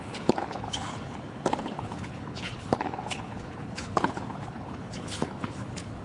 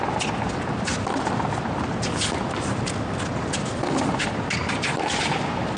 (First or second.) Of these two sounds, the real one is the second